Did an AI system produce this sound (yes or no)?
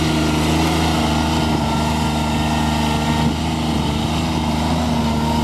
no